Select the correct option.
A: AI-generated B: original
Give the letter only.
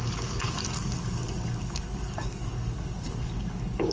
A